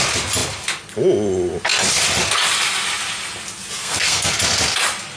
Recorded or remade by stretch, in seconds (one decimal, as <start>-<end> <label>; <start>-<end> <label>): 0.0-3.8 recorded; 3.8-4.3 remade; 4.3-5.2 recorded